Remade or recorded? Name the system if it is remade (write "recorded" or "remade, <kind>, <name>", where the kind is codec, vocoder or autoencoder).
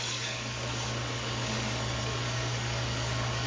remade, codec, DAC